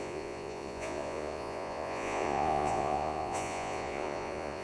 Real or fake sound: fake